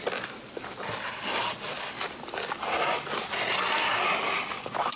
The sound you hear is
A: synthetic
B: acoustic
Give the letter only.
B